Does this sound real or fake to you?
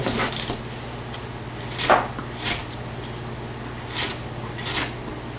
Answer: fake